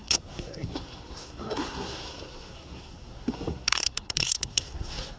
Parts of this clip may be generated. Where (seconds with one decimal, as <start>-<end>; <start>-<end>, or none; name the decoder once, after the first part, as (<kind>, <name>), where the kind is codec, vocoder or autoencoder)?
0.0-5.2 (codec, SNAC)